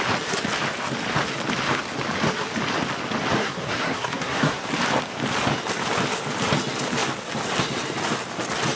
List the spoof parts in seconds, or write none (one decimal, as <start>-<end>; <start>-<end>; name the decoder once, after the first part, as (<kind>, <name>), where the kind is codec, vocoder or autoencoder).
3.4-4.7 (codec, SNAC)